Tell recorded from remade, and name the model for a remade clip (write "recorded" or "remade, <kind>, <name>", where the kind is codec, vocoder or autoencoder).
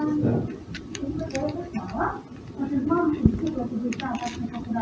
recorded